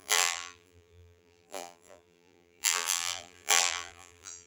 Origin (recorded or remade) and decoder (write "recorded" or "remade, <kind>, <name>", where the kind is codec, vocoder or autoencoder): remade, vocoder, BigVGAN v2